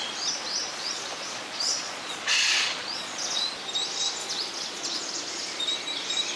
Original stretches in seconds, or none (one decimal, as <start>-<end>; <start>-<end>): 0.0-0.6; 3.5-4.2; 5.0-6.4